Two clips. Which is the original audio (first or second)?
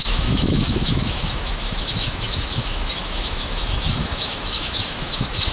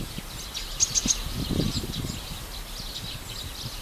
second